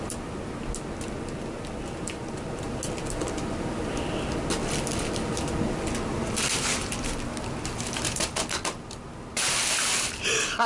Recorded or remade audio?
recorded